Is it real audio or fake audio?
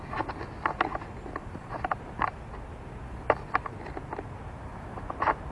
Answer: real